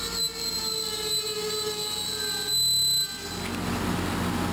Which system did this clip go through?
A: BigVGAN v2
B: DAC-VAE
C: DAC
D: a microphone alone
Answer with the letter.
D